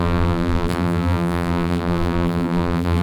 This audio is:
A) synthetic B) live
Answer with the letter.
A